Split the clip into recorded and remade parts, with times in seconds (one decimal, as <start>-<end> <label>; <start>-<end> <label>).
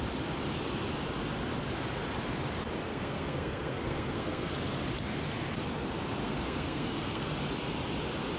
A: 0.0-2.9 recorded; 2.9-4.5 remade; 4.5-6.2 recorded; 6.2-7.3 remade; 7.3-8.4 recorded